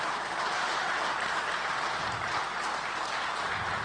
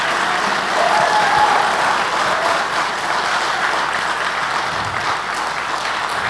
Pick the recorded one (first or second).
second